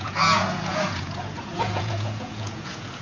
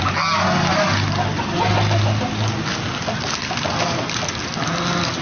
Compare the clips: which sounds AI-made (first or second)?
first